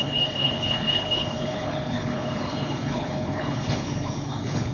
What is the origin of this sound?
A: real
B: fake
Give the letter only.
B